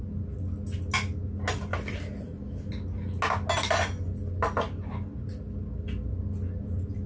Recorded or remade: recorded